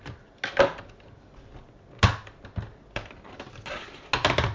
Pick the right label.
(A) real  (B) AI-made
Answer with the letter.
A